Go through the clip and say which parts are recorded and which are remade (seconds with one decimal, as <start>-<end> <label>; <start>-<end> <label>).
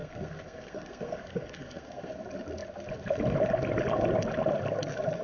0.0-2.1 remade; 2.1-5.2 recorded